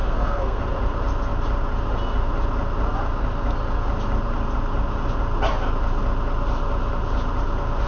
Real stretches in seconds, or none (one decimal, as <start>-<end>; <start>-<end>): 0.6-7.9